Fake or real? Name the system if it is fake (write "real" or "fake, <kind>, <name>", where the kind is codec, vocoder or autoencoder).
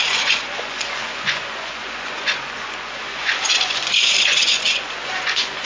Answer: fake, vocoder, Vocos